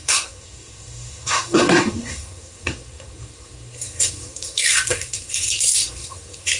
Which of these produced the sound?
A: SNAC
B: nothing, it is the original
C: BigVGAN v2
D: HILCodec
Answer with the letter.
A